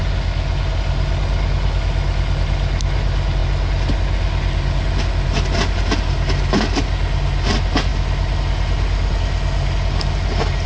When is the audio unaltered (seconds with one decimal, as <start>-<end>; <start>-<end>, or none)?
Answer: 0.0-10.7